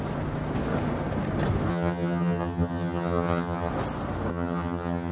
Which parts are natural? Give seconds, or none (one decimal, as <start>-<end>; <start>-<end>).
0.0-1.7; 3.7-4.3